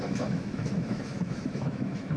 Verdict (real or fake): fake